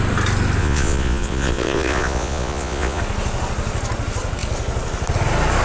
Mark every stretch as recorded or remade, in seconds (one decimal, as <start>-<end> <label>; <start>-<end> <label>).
0.0-0.6 recorded; 0.6-3.0 remade; 3.0-5.6 recorded